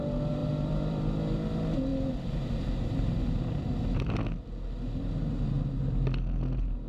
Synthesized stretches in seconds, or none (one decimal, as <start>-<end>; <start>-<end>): 0.4-1.2